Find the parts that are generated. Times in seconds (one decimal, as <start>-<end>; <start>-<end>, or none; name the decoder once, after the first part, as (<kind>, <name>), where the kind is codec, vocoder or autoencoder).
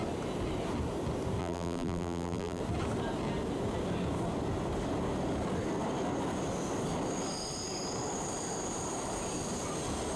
1.4-2.6 (vocoder, BigVGAN v2)